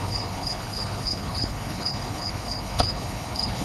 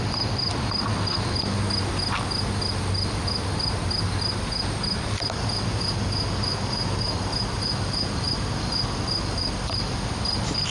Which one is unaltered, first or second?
second